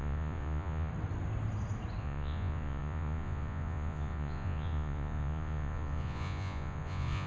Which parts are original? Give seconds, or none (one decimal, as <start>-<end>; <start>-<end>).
0.9-2.0